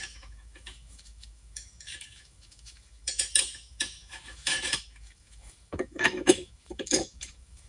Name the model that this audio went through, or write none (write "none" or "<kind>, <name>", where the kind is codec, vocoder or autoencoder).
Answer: autoencoder, DAC-VAE